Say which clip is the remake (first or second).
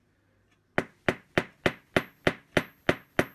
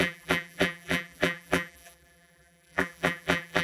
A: second